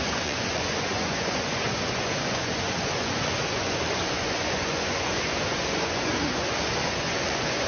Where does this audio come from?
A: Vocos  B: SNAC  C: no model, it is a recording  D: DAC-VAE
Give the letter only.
A